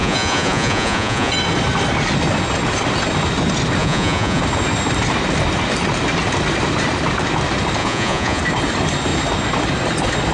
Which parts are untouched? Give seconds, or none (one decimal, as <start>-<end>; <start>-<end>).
1.3-3.8; 4.4-7.8; 8.4-10.3